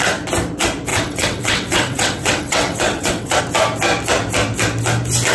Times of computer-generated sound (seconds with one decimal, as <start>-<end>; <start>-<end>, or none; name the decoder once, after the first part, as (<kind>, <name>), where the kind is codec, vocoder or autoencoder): 0.9-3.4 (vocoder, WaveNeXt)